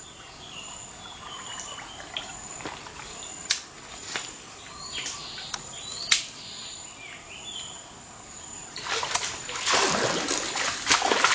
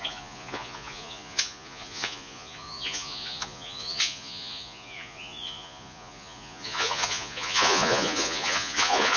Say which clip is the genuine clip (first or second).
first